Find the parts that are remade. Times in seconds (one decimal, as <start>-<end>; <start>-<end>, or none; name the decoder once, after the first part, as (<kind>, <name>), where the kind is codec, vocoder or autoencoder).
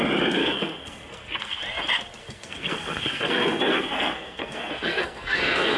0.4-1.6 (codec, SNAC); 2.2-5.8